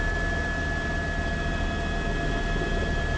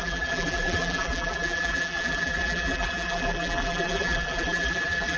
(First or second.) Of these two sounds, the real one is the first